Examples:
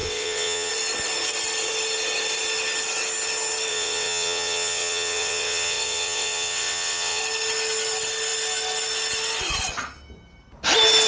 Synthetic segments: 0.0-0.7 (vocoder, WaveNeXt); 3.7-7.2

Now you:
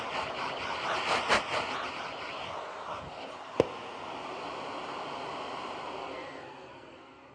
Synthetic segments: 6.0-7.3 (codec, SNAC)

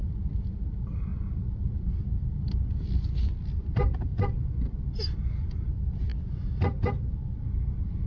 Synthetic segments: 0.0-0.7 (vocoder, BigVGAN v2); 4.1-5.0

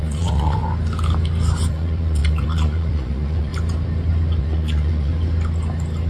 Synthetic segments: 0.0-0.6 (vocoder, Vocos); 1.7-3.5; 4.4-5.1

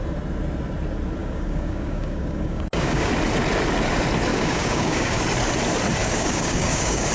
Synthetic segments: 1.2-3.1 (codec, DAC); 4.3-5.2; 6.0-7.1

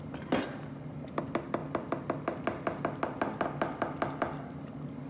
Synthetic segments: none

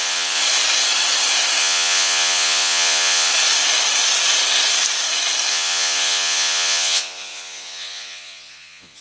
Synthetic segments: 0.0-0.4 (vocoder, Vocos); 1.6-3.3; 5.5-9.0